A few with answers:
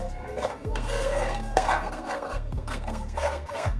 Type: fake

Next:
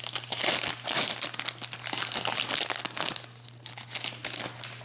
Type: real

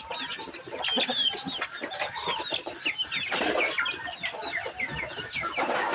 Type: real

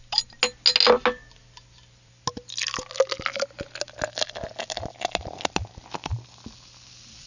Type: real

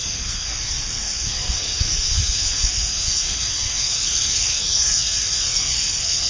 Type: fake